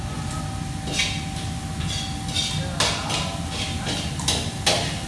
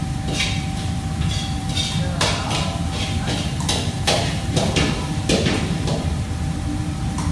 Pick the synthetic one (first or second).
second